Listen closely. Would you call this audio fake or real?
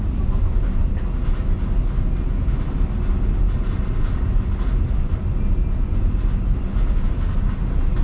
real